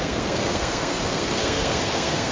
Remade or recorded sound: remade